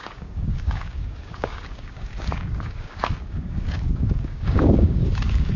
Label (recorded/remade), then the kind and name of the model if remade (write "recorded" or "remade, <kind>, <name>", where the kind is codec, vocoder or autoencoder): remade, codec, DAC